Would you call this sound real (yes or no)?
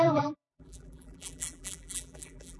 no